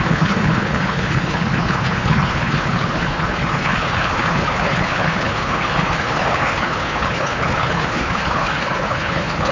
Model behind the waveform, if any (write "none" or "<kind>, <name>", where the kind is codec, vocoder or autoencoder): codec, HILCodec